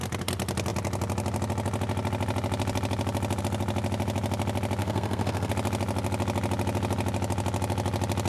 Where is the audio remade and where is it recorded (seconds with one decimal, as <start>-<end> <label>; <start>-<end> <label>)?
0.0-4.8 recorded; 4.8-5.5 remade; 5.5-8.3 recorded

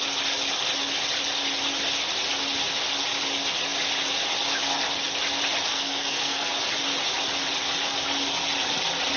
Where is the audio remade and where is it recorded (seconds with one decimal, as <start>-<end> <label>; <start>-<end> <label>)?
0.0-5.7 recorded; 5.7-6.5 remade; 6.5-9.2 recorded